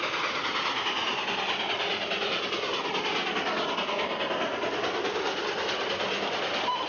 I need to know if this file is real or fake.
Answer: real